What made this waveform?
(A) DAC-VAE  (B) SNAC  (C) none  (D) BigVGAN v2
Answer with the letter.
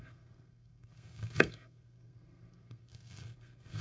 B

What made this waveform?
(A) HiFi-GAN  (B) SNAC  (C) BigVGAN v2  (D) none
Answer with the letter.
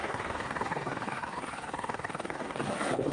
B